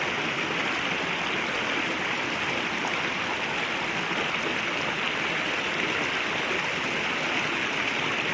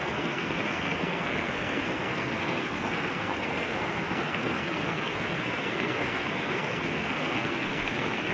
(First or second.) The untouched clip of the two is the first